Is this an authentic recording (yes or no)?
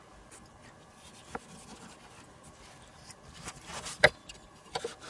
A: yes